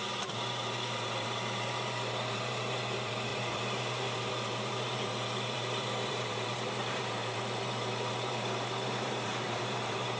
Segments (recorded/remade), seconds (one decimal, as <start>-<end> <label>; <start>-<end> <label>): 0.0-10.2 remade